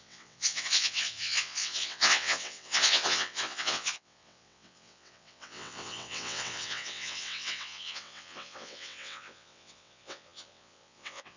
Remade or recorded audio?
remade